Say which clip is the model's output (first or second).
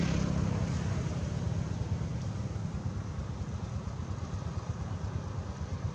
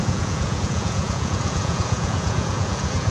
second